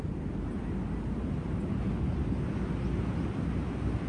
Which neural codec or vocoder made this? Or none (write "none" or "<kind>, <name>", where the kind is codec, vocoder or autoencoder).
none